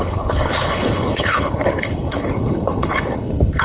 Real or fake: fake